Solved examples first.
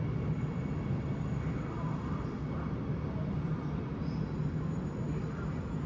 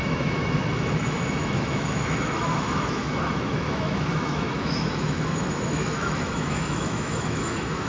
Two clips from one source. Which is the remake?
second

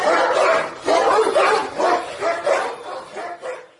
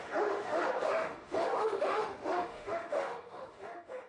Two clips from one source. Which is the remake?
second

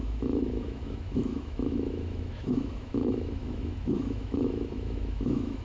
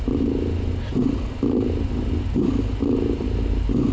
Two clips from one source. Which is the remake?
first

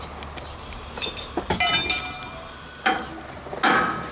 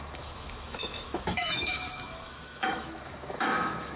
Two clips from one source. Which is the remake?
second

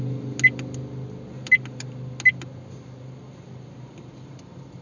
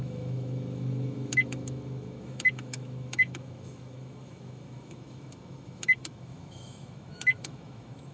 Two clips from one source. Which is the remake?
second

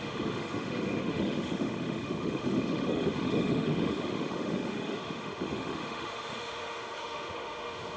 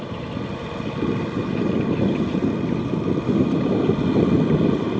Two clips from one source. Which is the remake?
first